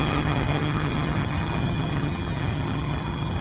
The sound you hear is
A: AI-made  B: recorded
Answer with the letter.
A